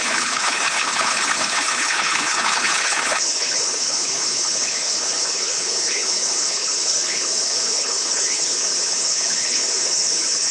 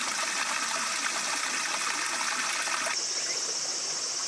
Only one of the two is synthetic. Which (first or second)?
first